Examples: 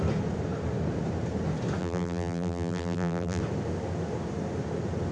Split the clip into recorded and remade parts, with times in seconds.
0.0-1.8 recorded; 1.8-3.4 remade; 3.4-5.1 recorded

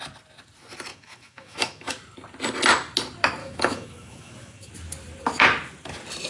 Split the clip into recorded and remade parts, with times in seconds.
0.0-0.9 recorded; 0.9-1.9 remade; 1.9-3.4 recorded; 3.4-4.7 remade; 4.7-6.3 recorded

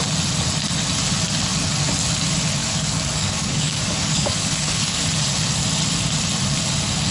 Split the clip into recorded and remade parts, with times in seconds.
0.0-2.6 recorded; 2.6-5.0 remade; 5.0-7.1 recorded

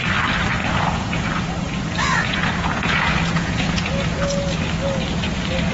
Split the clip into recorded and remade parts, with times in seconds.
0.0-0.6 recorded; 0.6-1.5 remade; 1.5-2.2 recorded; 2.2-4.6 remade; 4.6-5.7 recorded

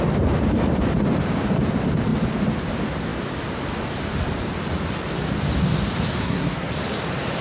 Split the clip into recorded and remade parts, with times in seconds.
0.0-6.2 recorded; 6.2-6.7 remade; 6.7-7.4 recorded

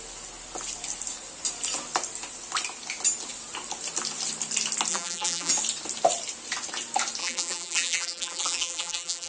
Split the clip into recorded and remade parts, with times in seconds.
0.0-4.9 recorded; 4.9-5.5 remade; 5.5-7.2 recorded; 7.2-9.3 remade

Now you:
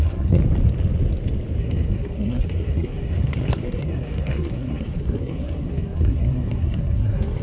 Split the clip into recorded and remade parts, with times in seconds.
0.0-0.4 remade; 0.4-1.6 recorded; 1.6-7.4 remade